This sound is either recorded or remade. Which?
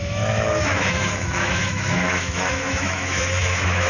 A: remade